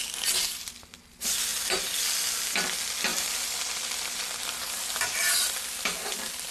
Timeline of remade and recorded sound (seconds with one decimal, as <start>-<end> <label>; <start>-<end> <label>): 0.0-1.5 recorded; 1.5-2.0 remade; 2.0-3.1 recorded; 3.1-5.3 remade; 5.3-6.5 recorded

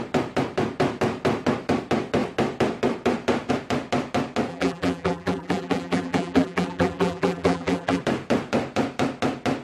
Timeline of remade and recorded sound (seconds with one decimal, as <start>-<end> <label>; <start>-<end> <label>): 0.0-4.5 recorded; 4.5-8.0 remade; 8.0-9.6 recorded

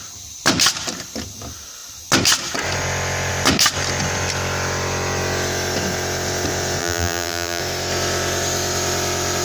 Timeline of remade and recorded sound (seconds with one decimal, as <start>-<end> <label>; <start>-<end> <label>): 0.0-6.8 recorded; 6.8-7.6 remade; 7.6-9.4 recorded

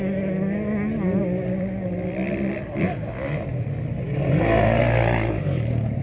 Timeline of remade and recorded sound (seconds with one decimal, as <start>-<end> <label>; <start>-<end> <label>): 0.0-2.5 recorded; 2.5-3.1 remade; 3.1-3.5 recorded; 3.5-4.8 remade; 4.8-6.0 recorded

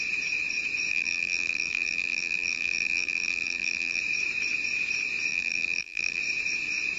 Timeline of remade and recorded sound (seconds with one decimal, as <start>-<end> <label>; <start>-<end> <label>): 0.0-0.9 recorded; 0.9-4.0 remade; 4.0-5.3 recorded; 5.3-6.2 remade; 6.2-7.0 recorded

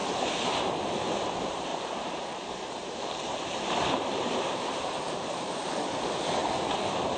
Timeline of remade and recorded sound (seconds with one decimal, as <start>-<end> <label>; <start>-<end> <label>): 0.0-1.7 recorded; 1.7-4.8 remade; 4.8-7.2 recorded

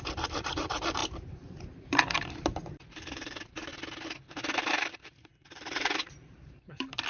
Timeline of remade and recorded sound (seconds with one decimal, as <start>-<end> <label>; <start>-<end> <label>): 0.0-1.0 remade; 1.0-1.5 recorded; 1.5-3.7 remade; 3.7-4.7 recorded; 4.7-7.1 remade

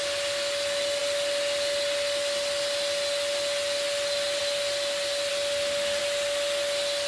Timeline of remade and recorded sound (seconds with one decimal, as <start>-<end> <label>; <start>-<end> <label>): 0.0-7.1 recorded